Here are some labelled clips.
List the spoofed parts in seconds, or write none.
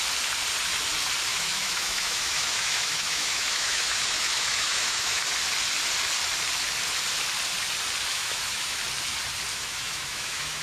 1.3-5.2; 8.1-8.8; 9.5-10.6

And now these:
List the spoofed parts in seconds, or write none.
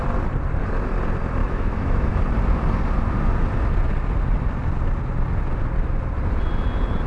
1.4-2.1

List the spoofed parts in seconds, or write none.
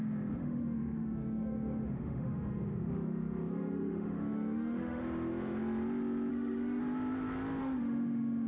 0.4-5.0; 6.3-6.8; 7.6-8.5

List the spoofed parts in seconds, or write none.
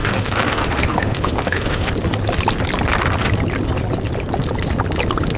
0.0-1.9